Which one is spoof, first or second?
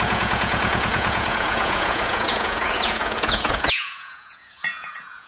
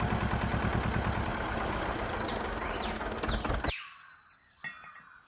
first